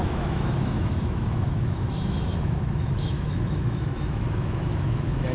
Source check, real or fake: fake